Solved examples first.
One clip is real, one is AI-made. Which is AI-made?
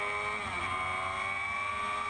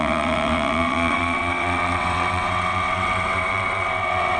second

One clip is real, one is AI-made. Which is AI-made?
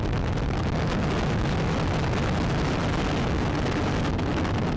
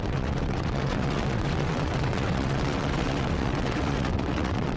second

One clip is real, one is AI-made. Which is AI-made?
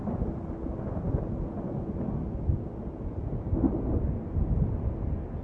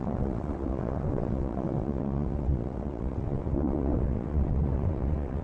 second